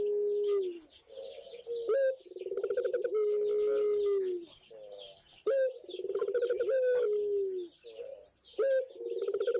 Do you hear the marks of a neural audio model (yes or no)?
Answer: no